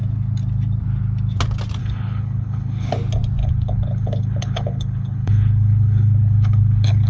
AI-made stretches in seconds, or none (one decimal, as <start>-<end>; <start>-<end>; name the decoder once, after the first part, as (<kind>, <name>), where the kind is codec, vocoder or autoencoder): 1.8-2.9 (codec, HILCodec); 3.4-7.1